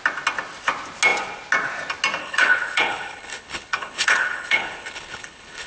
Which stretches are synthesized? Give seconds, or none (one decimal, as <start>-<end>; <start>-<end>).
2.2-5.7